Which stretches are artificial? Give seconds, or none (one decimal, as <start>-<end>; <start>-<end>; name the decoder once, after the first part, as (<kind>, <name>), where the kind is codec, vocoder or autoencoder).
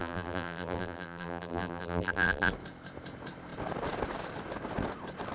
0.0-2.5 (vocoder, BigVGAN v2)